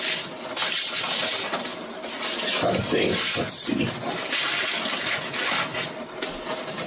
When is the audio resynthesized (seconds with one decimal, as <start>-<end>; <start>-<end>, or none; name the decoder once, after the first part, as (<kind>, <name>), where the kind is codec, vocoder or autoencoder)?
none